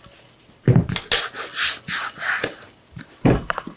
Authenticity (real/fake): real